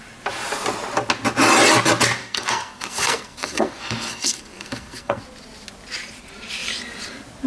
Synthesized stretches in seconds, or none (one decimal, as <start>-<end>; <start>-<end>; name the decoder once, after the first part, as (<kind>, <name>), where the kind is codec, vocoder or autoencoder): 2.2-5.2 (codec, SNAC)